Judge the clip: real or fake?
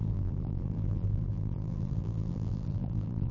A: fake